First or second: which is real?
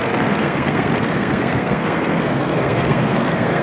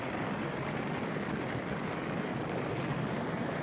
second